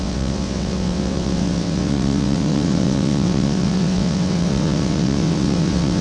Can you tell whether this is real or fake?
fake